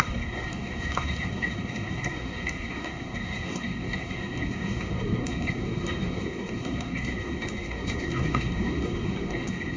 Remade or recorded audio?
remade